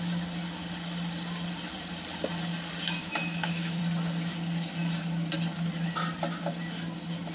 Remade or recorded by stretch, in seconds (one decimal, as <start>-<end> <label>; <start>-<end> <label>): 0.0-3.0 recorded; 3.0-3.8 remade; 3.8-7.3 recorded